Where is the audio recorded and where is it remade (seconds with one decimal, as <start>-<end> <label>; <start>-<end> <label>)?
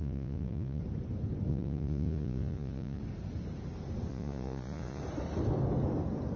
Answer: 0.0-0.8 remade; 0.8-1.5 recorded; 1.5-3.0 remade; 3.0-4.1 recorded; 4.1-5.0 remade; 5.0-6.4 recorded